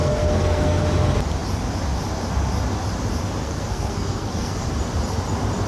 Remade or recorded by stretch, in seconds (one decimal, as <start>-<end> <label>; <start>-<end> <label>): 0.0-0.8 remade; 0.8-3.4 recorded; 3.4-4.7 remade; 4.7-5.7 recorded